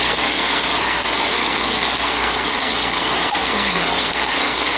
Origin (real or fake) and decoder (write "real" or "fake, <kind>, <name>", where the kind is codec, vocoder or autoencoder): fake, codec, SNAC